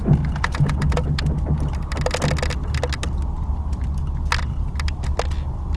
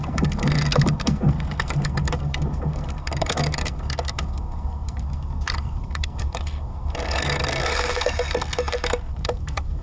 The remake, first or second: second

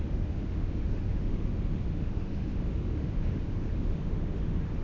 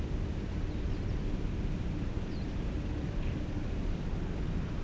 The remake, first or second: first